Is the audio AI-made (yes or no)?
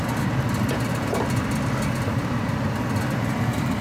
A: no